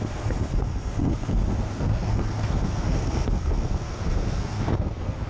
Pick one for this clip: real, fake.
fake